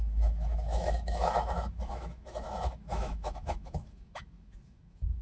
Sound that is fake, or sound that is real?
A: fake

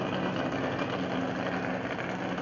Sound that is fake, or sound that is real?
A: real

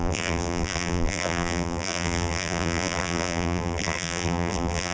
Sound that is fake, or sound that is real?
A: fake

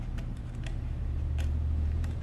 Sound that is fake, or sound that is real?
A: fake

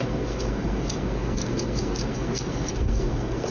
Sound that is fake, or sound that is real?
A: fake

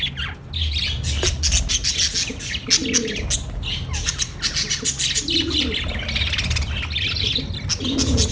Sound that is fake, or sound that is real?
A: real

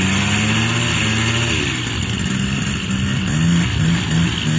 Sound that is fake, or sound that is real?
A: real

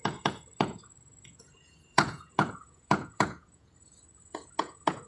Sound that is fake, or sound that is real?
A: fake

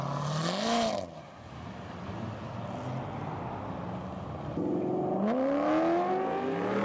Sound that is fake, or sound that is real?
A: real